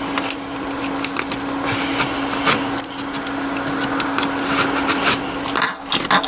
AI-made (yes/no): no